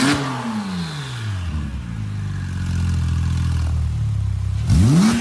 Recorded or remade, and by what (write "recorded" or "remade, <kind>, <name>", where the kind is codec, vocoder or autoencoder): recorded